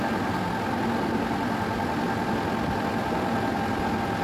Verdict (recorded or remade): recorded